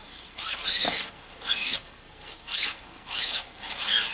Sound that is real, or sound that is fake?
fake